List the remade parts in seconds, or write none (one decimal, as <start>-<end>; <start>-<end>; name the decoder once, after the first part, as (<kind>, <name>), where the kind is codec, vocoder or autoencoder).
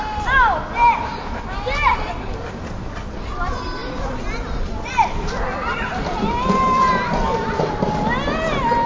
none